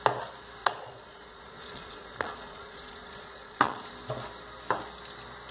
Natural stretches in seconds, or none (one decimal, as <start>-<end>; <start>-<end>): 0.0-0.6; 3.9-5.5